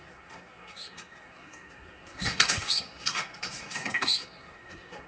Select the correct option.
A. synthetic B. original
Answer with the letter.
A